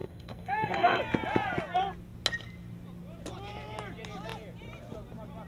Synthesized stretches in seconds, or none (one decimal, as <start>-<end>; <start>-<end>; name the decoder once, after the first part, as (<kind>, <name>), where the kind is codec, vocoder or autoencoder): 0.0-1.0 (codec, SNAC)